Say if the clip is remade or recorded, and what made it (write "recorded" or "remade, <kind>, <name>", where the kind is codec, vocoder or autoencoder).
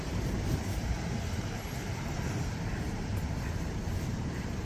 remade, vocoder, BigVGAN v2